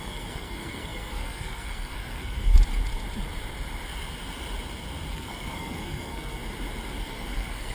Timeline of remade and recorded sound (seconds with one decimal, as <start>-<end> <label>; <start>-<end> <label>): 0.0-2.5 remade; 2.5-5.1 recorded; 5.1-6.4 remade; 6.4-7.0 recorded; 7.0-7.7 remade